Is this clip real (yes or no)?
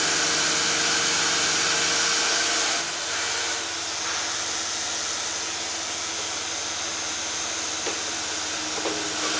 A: yes